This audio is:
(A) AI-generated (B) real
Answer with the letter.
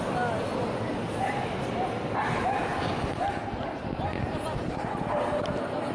B